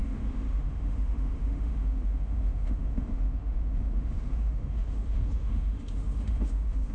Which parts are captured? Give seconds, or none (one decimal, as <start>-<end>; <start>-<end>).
none